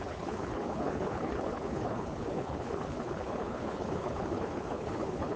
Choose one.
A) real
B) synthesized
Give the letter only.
B